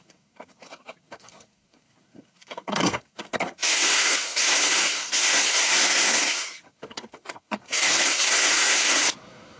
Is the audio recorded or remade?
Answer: remade